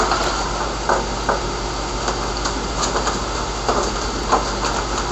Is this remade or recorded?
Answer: recorded